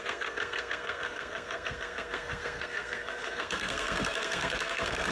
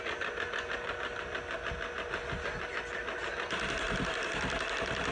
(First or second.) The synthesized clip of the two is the first